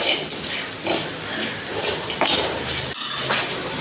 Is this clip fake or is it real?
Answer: real